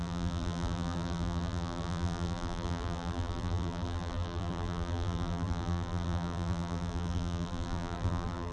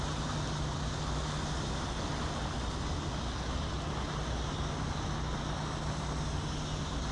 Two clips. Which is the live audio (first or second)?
second